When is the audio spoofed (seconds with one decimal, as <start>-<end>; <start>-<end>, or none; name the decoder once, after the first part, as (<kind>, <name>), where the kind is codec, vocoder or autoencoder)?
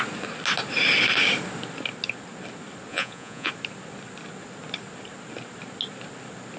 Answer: 2.9-3.5 (vocoder, Vocos)